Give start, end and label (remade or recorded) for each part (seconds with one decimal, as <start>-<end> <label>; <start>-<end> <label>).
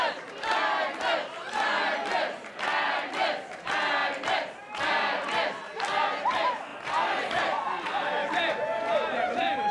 0.0-9.7 recorded